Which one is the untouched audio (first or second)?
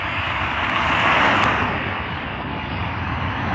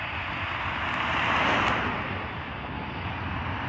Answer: second